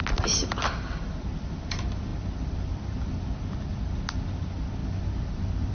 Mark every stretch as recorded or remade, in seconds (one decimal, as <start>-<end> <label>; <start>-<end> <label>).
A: 0.0-2.1 recorded; 2.1-3.0 remade; 3.0-4.8 recorded; 4.8-5.7 remade